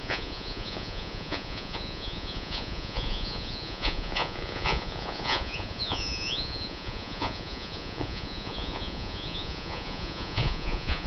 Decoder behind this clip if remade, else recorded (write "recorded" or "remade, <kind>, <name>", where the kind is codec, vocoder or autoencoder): remade, vocoder, Vocos